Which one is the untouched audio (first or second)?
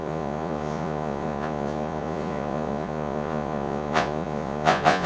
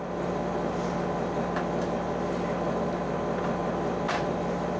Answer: second